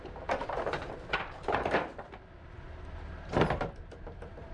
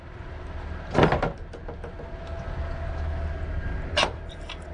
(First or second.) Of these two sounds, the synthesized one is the first